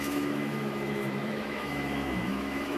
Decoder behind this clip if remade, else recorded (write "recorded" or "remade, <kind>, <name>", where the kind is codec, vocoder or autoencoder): remade, autoencoder, DAC-VAE